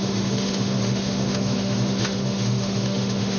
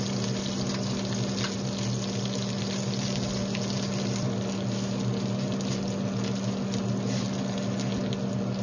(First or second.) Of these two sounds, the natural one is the second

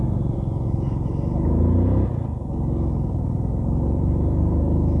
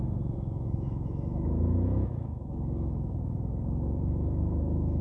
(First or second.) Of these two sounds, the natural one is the first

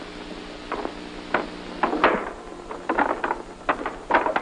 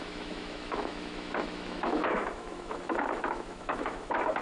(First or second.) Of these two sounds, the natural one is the first